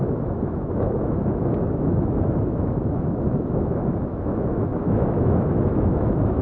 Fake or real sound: fake